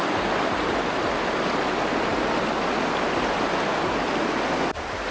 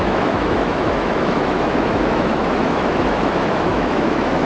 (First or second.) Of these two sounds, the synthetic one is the second